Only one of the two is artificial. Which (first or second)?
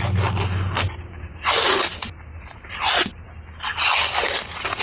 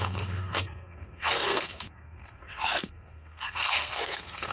second